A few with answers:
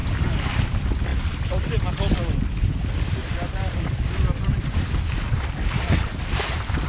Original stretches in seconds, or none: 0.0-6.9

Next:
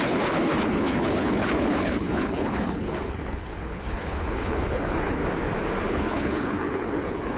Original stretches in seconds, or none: 5.2-5.9

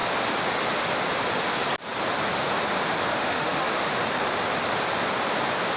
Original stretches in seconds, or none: 0.0-3.1; 4.0-5.8

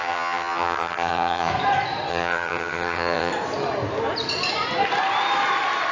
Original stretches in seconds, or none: 1.5-2.1; 3.3-5.9